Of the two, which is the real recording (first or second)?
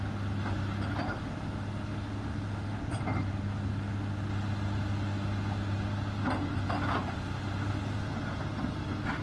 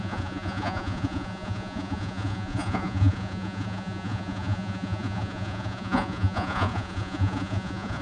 first